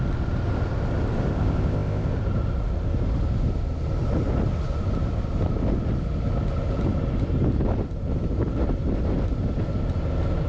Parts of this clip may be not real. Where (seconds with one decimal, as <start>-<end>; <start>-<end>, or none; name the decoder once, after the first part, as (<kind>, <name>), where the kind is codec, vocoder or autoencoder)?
1.3-2.1 (codec, ZipCodec)